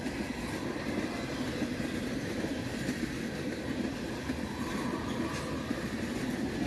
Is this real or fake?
real